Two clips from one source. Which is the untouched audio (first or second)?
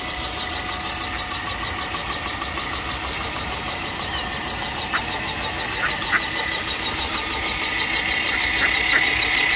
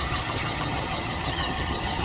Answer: first